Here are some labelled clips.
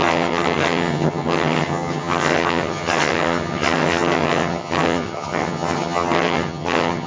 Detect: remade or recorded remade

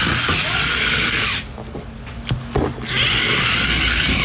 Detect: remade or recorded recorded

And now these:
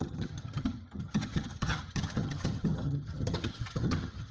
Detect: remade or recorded remade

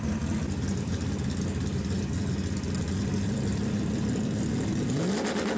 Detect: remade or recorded recorded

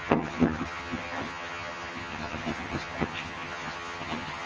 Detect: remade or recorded remade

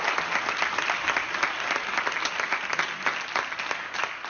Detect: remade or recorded recorded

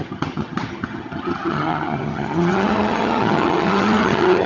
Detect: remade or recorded remade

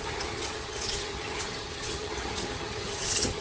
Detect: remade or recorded remade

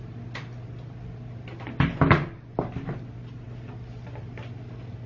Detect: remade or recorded recorded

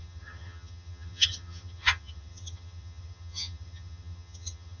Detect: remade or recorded remade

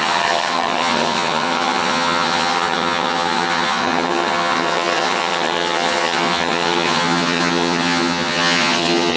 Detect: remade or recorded remade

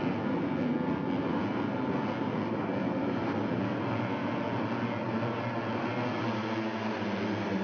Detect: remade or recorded recorded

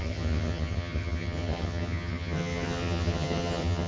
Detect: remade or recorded remade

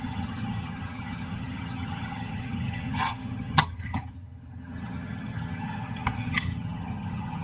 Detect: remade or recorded remade